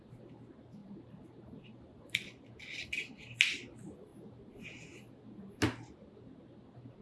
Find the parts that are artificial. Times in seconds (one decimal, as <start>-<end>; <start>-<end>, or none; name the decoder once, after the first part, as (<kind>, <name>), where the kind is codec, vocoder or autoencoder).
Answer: 0.8-2.0 (vocoder, BigVGAN v2)